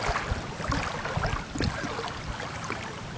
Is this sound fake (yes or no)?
no